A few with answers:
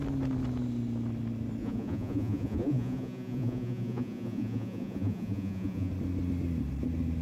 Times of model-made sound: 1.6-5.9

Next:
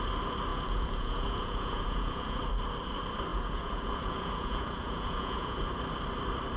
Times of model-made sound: 0.5-2.4; 3.3-5.8